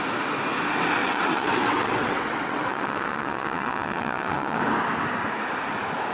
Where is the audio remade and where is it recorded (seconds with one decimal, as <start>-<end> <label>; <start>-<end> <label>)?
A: 0.0-1.0 recorded; 1.0-4.6 remade; 4.6-6.1 recorded